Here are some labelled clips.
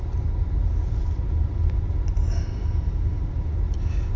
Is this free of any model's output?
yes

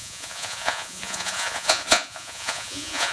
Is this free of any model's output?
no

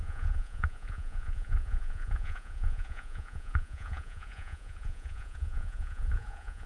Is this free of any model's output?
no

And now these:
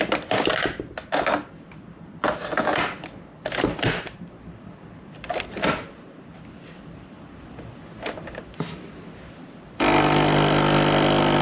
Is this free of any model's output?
yes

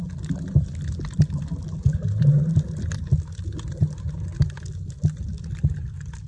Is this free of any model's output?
yes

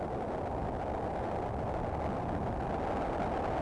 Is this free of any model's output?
yes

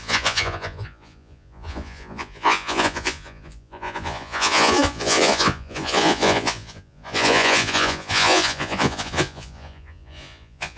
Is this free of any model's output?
no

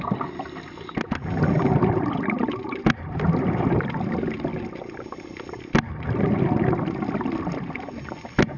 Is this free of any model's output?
yes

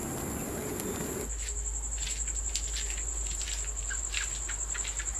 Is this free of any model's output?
yes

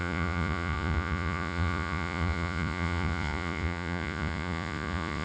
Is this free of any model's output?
no